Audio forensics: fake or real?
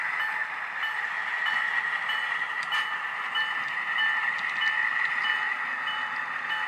real